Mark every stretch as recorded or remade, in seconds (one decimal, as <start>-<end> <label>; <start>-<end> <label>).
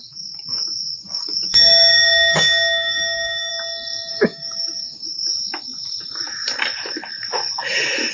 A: 0.0-3.5 remade; 3.5-4.1 recorded; 4.1-5.3 remade; 5.3-8.1 recorded